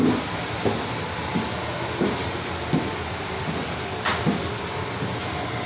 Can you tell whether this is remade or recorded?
recorded